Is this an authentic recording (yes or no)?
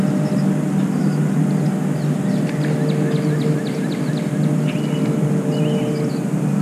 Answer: yes